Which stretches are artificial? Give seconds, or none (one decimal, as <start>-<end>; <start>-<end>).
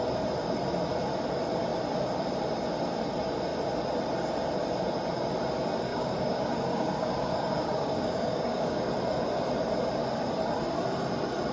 5.9-8.8